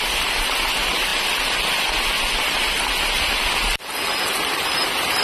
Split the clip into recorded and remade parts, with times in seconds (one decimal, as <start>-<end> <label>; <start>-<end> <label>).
0.0-5.2 recorded